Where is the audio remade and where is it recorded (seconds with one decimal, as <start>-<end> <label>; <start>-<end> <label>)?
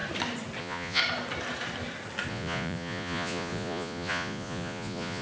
0.0-0.6 recorded; 0.6-1.0 remade; 1.0-2.3 recorded; 2.3-5.2 remade